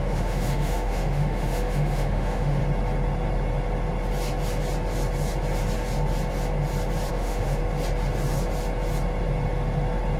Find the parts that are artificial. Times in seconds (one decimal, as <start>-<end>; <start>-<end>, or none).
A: 0.0-2.6; 7.1-7.6